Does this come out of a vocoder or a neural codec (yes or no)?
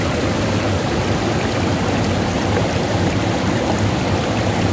no